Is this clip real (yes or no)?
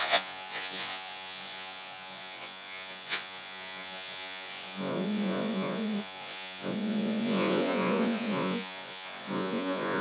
no